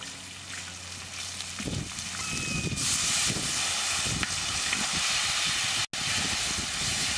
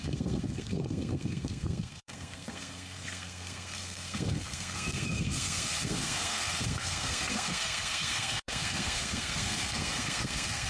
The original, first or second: first